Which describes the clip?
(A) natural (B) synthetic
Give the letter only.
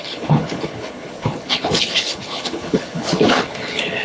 B